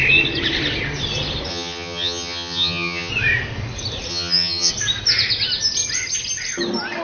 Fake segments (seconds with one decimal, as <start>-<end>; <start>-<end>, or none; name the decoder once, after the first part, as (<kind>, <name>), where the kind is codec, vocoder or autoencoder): 1.5-3.1 (vocoder, HiFi-GAN); 4.1-4.7